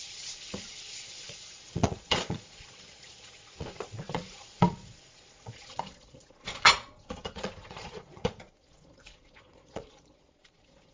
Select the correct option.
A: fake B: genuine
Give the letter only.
A